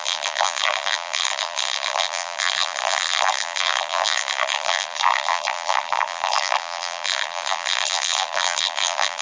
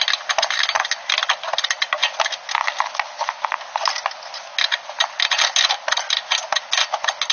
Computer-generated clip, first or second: first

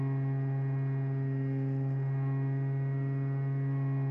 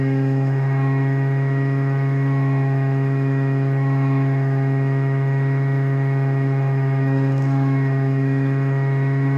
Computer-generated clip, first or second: second